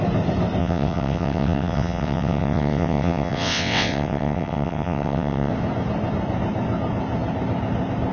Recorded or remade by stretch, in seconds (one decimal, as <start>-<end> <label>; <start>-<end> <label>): 0.0-0.6 recorded; 0.6-5.5 remade; 5.5-8.1 recorded